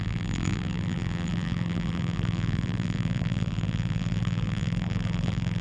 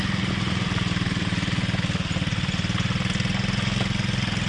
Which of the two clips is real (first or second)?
second